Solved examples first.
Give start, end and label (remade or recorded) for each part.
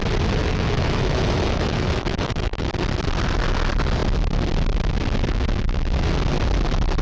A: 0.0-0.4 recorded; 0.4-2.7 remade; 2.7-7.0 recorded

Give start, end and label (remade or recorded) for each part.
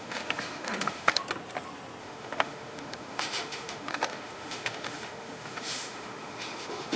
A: 0.0-1.2 remade; 1.2-2.0 recorded; 2.0-7.0 remade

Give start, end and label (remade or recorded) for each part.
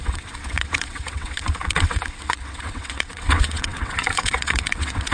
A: 0.0-5.1 remade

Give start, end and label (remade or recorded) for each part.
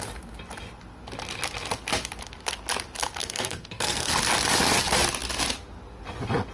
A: 0.0-3.2 recorded; 3.2-4.1 remade; 4.1-6.5 recorded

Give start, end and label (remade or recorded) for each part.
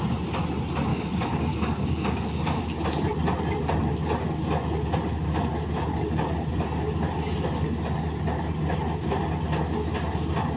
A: 0.0-0.9 recorded; 0.9-2.6 remade; 2.6-10.6 recorded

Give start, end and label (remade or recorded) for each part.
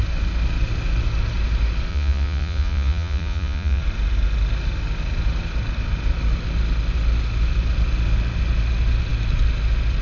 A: 0.0-1.9 recorded; 1.9-3.8 remade; 3.8-10.0 recorded